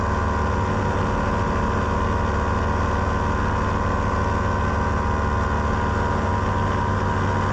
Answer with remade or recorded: recorded